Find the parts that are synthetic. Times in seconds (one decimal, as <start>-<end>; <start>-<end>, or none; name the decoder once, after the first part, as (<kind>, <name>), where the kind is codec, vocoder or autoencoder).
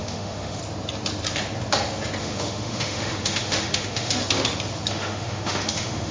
0.0-0.6 (autoencoder, DAC-VAE); 2.2-4.2; 4.9-6.1